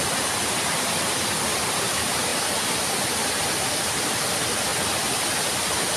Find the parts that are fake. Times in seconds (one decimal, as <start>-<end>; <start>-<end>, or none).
0.0-4.7